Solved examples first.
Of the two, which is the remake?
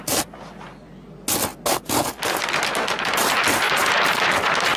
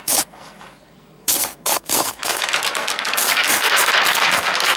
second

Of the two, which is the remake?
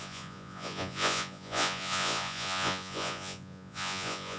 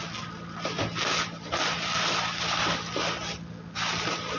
first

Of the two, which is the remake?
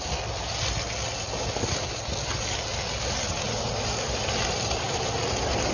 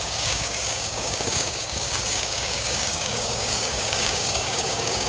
second